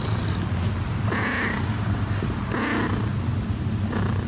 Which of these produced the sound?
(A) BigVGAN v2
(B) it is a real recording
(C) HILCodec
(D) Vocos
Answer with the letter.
B